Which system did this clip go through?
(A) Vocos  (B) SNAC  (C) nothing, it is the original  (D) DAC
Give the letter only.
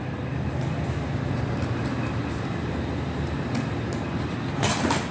C